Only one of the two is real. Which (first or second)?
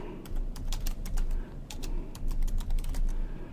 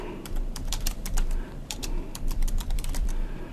first